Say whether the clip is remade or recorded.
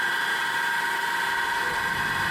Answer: recorded